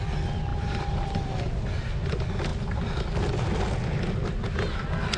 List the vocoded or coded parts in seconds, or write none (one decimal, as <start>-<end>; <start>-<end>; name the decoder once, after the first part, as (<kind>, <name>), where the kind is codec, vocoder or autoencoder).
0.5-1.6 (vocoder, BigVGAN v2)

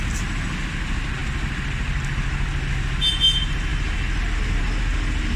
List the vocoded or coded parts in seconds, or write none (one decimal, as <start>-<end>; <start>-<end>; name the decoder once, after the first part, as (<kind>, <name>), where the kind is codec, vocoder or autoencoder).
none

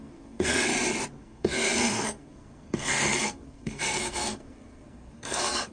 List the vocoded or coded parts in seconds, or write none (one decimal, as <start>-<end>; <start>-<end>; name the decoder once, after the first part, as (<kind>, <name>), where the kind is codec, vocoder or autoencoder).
0.0-0.7 (codec, SNAC); 1.2-5.7

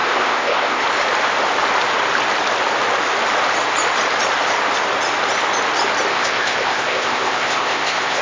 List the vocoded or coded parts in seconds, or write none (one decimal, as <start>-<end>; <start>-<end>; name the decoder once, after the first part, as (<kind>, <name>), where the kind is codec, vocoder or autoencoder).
0.0-0.8 (codec, ZipCodec); 6.1-8.2

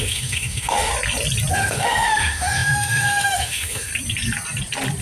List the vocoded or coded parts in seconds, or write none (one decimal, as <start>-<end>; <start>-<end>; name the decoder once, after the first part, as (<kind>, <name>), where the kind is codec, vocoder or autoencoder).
0.0-0.9 (autoencoder, DAC-VAE); 1.5-3.9

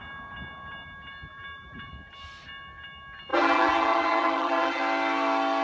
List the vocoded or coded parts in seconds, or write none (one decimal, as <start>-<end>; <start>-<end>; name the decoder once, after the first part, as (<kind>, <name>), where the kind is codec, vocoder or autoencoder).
1.3-1.9 (vocoder, BigVGAN v2); 3.3-4.8

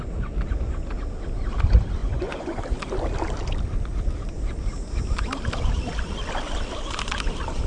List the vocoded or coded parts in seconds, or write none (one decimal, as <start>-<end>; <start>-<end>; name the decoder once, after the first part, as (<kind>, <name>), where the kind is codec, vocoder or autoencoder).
2.0-2.6 (vocoder, Vocos)